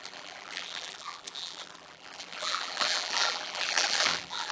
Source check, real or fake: fake